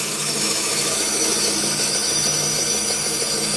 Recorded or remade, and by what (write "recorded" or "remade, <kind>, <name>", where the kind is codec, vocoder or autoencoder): remade, autoencoder, DAC-VAE